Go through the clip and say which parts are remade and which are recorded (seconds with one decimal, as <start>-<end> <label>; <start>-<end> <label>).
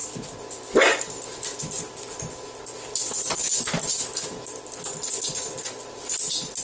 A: 0.0-6.6 recorded